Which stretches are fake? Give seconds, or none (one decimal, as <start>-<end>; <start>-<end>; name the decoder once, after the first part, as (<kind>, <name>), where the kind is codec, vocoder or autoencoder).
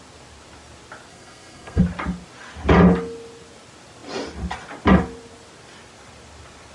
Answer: 1.1-1.8 (codec, SNAC)